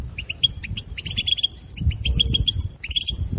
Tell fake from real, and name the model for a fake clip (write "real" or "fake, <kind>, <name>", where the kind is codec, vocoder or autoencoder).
fake, vocoder, BigVGAN v2